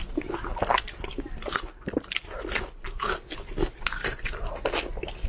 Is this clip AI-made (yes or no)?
no